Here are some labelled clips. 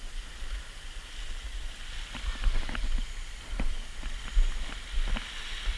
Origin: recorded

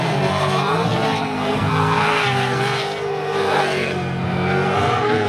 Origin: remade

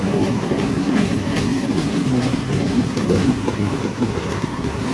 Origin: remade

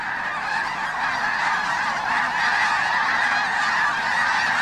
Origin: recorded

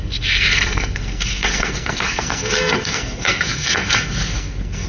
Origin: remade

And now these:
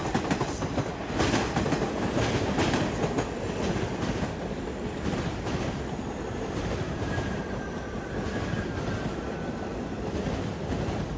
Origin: recorded